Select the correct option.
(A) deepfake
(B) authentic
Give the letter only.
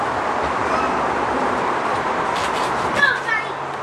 B